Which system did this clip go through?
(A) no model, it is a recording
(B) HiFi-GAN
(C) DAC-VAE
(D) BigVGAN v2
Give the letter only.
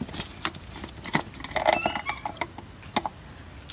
A